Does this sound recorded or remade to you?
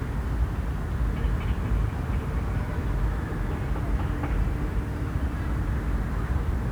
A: recorded